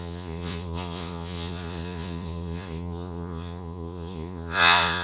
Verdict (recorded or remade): remade